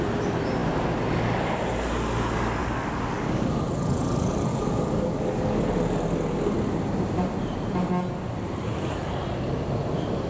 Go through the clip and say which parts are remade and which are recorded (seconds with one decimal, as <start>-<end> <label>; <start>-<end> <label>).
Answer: 0.0-2.6 recorded; 2.6-3.5 remade; 3.5-4.5 recorded; 4.5-5.7 remade; 5.7-10.3 recorded